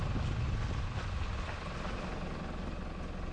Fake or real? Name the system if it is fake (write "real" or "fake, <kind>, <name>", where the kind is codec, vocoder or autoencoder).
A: real